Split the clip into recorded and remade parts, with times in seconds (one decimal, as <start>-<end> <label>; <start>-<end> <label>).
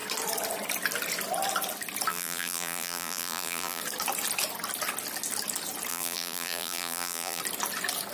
0.0-2.1 recorded; 2.1-3.8 remade; 3.8-5.9 recorded; 5.9-7.4 remade; 7.4-8.1 recorded